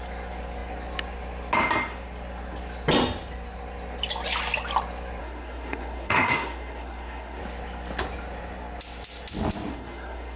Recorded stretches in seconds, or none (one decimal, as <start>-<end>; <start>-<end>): 0.0-5.2; 7.4-9.7